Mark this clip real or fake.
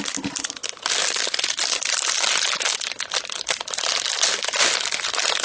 real